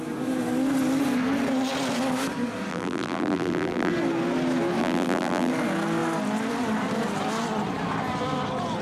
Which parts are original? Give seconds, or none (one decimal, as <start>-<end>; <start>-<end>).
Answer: 0.0-2.7; 3.9-4.8; 5.5-8.8

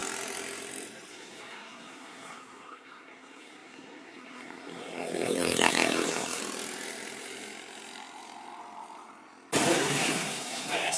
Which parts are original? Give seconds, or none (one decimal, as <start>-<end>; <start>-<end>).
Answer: 0.0-1.1; 6.4-9.7

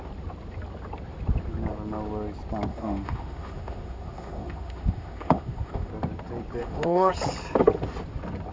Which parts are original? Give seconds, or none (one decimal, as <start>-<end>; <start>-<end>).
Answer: 0.0-2.7; 5.9-6.6; 7.1-8.5

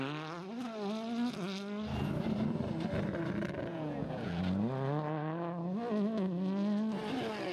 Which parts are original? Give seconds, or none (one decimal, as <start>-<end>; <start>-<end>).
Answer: 0.0-3.7; 4.4-7.5

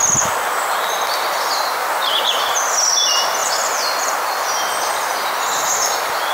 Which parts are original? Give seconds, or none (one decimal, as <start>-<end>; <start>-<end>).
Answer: 0.0-1.8; 2.4-3.4; 4.2-6.3

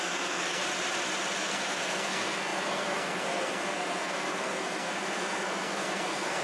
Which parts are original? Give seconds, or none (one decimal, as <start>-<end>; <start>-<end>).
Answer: 0.6-1.4

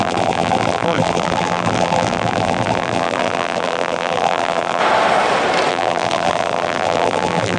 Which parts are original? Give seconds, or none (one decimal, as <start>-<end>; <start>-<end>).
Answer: 4.8-5.7

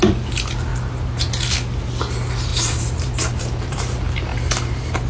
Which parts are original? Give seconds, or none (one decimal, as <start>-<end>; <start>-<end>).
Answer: 0.0-0.7; 1.3-2.5; 3.8-4.3